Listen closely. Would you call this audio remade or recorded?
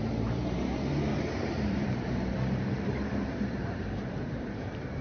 remade